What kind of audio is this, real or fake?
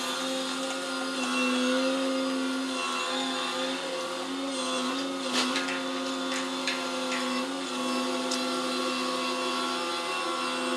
real